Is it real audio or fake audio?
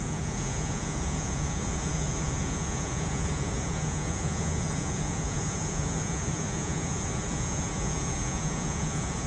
fake